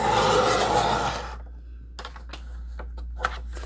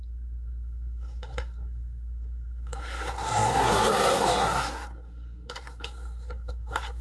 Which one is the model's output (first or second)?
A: second